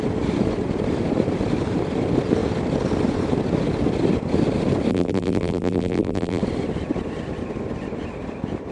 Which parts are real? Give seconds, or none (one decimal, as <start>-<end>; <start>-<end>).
0.0-4.9; 6.4-8.7